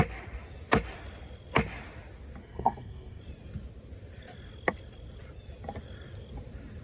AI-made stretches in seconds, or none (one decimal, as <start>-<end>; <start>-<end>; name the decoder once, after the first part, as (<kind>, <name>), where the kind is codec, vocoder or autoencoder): 2.4-3.2 (codec, SNAC)